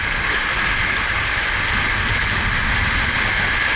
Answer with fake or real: real